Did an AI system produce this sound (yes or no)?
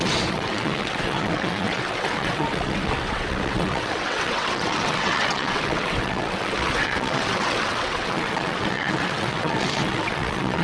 yes